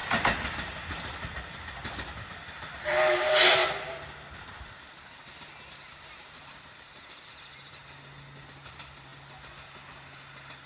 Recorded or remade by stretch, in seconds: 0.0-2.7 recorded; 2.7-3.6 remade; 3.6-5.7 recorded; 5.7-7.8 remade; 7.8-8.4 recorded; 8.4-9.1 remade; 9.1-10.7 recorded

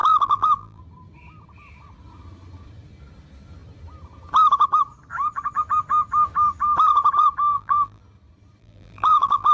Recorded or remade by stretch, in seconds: 0.0-0.8 remade; 0.8-7.5 recorded; 7.5-8.0 remade; 8.0-8.6 recorded; 8.6-9.5 remade

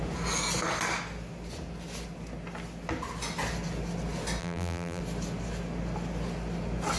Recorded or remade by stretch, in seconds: 0.0-4.4 recorded; 4.4-5.0 remade; 5.0-7.0 recorded

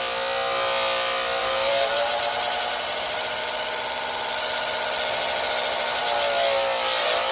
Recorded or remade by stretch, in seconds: 0.0-1.4 recorded; 1.4-3.4 remade; 3.4-7.3 recorded

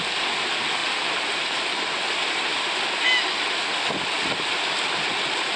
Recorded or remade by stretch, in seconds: 0.0-0.8 recorded; 0.8-1.9 remade; 1.9-5.6 recorded

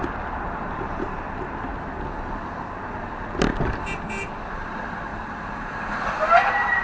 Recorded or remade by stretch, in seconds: 0.0-1.7 remade; 1.7-4.5 recorded; 4.5-6.8 remade